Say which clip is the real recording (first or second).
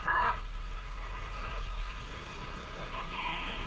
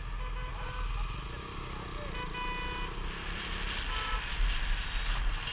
second